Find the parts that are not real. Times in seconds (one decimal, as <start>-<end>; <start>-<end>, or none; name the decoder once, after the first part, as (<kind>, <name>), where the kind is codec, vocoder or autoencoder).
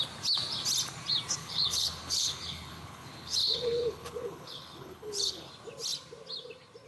1.4-5.5 (codec, HILCodec)